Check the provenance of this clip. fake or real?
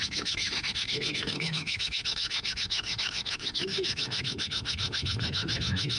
fake